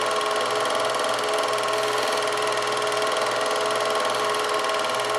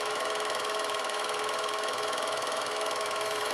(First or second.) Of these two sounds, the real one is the first